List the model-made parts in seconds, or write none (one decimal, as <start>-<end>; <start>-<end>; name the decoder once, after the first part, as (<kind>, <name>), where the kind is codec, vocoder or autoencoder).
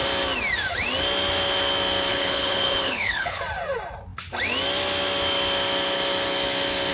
2.1-3.4 (codec, HILCodec)